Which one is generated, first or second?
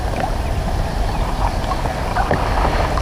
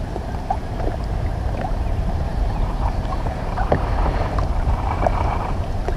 second